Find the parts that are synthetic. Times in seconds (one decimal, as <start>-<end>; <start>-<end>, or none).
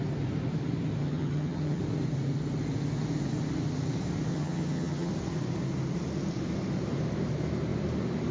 1.0-1.8; 4.3-5.1